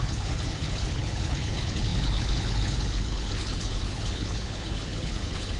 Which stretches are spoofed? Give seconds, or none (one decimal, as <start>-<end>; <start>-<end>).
0.0-5.6